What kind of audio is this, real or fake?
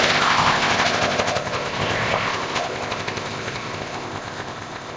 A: fake